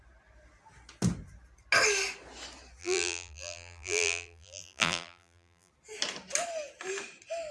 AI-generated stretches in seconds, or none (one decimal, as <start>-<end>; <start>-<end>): 2.8-5.7